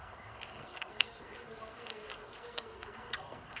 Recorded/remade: remade